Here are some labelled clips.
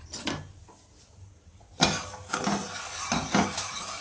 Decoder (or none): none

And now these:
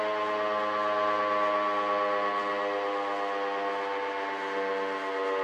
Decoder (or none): none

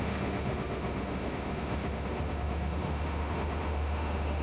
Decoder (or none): autoencoder, DAC-VAE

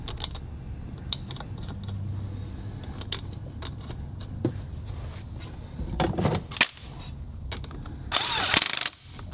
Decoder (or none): none